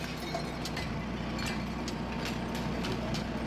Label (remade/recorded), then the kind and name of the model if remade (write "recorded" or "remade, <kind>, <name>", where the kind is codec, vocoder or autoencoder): recorded